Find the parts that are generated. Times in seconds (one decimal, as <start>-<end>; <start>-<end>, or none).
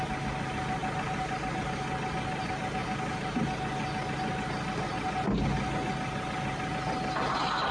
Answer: none